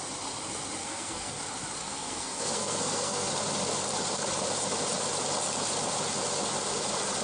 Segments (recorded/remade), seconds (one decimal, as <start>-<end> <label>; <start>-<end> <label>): 0.0-0.8 recorded; 0.8-1.4 remade; 1.4-1.8 recorded; 1.8-3.3 remade; 3.3-7.2 recorded